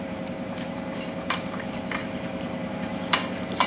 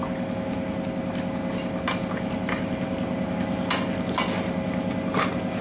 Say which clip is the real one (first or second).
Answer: second